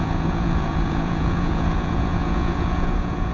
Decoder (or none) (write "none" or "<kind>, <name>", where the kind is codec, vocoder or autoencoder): vocoder, Vocos